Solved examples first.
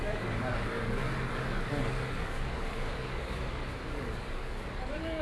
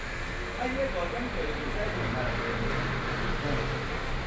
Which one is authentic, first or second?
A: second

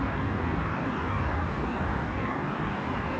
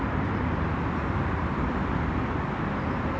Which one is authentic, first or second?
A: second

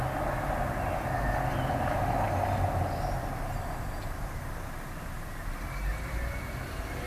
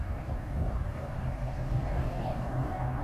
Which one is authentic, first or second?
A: first